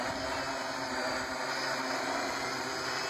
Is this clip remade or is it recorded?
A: recorded